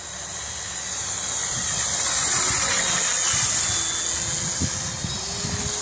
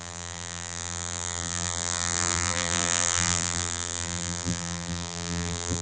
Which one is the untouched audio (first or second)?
first